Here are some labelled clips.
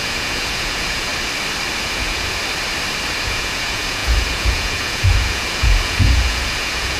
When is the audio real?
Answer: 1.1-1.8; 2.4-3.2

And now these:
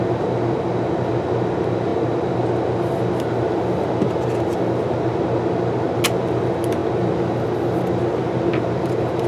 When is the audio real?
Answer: 0.0-9.3

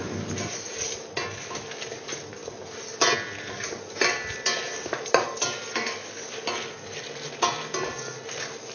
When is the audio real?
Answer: 0.0-8.7

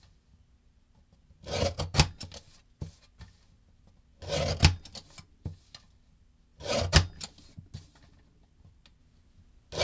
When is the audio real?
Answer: 0.0-9.8